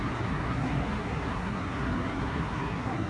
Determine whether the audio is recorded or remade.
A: remade